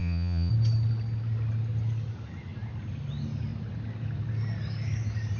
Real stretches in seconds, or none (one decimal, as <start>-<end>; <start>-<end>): 0.5-5.4